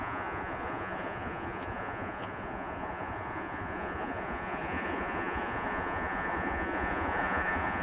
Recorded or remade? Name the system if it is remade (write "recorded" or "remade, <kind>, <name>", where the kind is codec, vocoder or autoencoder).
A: remade, vocoder, Vocos